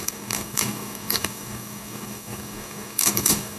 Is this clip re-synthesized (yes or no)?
yes